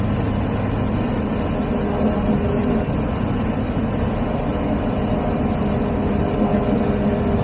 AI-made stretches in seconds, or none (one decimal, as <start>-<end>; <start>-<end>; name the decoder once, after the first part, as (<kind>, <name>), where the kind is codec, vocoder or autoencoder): none